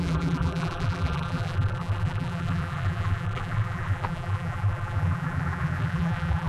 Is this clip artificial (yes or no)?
yes